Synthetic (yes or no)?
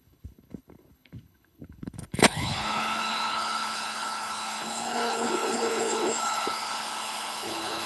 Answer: yes